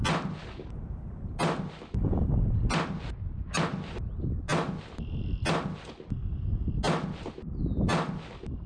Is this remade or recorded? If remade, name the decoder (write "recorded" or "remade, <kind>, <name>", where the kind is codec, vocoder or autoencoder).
recorded